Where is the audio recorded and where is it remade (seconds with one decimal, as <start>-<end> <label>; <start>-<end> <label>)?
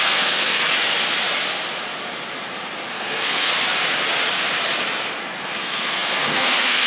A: 0.0-0.6 remade; 0.6-2.9 recorded; 2.9-3.5 remade; 3.5-5.4 recorded; 5.4-6.9 remade